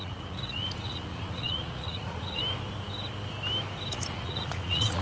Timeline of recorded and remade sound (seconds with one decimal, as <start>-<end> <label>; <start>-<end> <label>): 0.0-2.4 remade; 2.4-3.9 recorded; 3.9-5.0 remade